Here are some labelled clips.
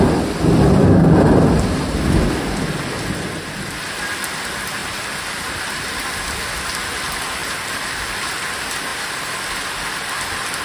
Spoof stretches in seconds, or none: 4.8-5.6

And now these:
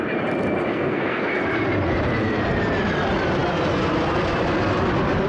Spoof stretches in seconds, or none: 0.7-1.4

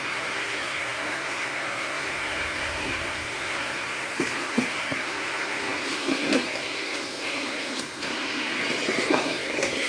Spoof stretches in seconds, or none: 0.0-8.6; 9.1-9.9

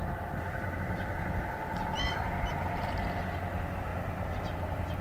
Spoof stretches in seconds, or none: none

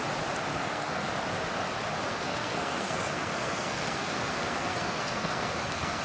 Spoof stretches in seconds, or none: 0.5-1.1; 2.1-6.0

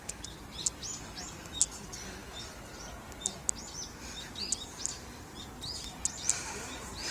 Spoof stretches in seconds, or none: none

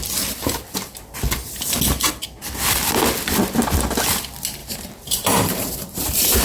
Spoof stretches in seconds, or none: 4.6-6.4

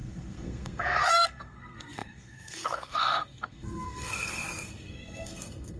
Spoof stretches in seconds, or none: 0.0-5.8